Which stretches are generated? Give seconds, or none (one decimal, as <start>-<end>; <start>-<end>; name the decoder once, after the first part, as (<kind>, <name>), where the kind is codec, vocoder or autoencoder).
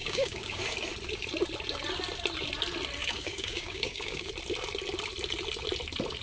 0.0-0.6 (codec, DAC); 3.0-4.3